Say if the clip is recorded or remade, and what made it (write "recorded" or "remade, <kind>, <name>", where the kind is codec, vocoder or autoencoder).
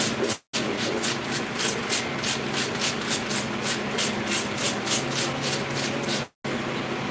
recorded